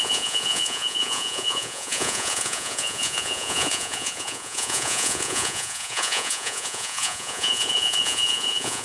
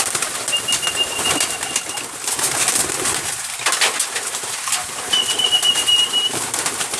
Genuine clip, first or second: second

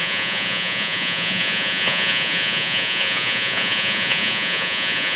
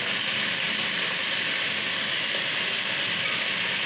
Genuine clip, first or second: second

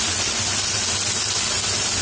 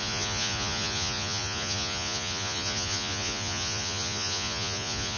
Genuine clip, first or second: first